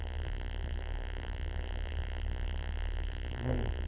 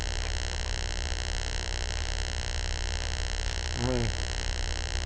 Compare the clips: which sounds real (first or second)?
second